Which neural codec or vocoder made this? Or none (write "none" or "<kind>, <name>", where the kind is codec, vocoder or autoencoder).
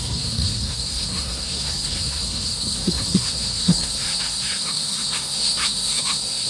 codec, SNAC